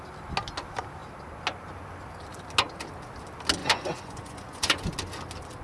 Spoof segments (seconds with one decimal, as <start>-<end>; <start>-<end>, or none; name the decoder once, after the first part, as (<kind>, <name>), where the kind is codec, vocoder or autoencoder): 3.6-4.9 (vocoder, Vocos)